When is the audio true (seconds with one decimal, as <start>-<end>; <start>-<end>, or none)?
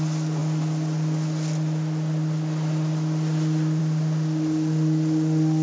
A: 0.0-5.6